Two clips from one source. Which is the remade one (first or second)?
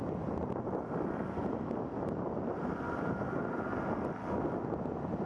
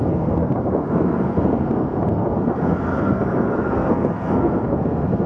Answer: second